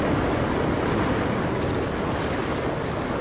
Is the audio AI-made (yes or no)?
no